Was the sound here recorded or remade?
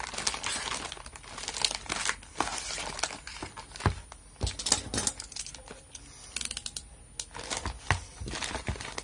recorded